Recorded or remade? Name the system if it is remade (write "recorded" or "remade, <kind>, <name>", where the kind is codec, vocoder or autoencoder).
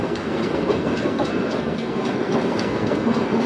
remade, codec, SNAC